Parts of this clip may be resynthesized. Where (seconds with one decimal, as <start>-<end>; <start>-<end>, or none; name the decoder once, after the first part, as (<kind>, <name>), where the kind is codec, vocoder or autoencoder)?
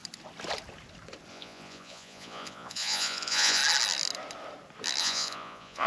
1.3-3.6 (vocoder, Vocos); 5.0-5.9